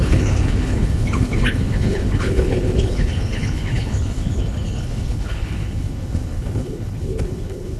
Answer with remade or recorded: remade